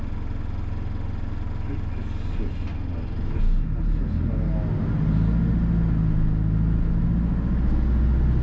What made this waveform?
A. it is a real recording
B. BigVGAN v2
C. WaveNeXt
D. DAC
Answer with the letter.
A